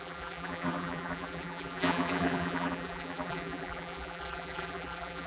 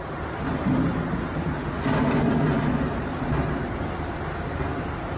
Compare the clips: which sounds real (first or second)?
second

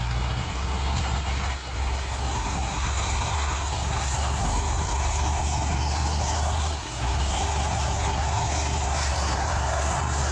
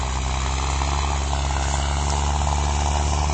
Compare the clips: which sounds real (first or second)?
second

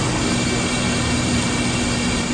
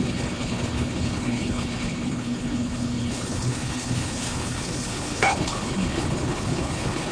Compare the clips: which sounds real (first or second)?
first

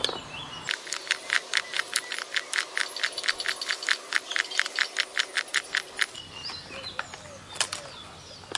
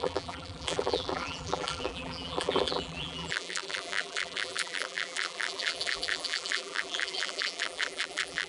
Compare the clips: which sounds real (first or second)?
first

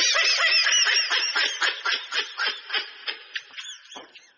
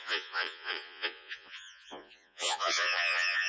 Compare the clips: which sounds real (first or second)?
first